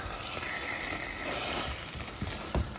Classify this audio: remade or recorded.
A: recorded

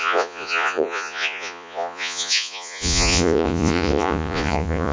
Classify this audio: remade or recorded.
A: remade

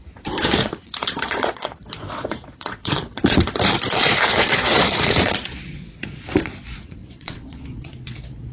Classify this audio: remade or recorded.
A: remade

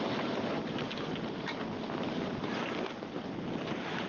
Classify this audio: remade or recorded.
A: recorded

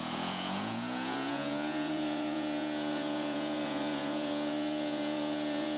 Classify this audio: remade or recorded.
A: remade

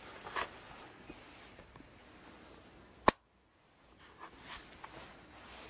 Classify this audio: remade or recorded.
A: recorded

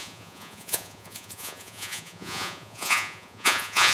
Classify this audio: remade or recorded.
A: remade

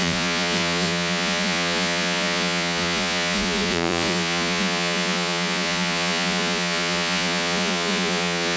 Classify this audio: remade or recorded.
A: remade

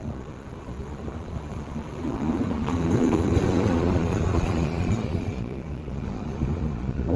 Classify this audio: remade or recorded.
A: remade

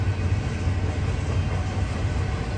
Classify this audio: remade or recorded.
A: recorded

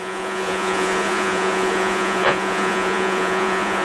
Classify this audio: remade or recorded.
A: remade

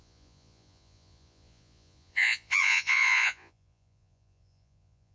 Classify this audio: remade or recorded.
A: remade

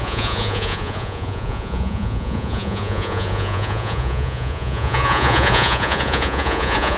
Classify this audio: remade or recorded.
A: remade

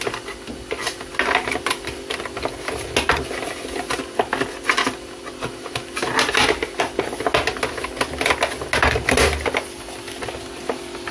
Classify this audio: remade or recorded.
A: recorded